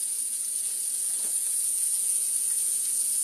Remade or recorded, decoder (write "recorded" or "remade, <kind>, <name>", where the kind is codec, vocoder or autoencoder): remade, vocoder, Vocos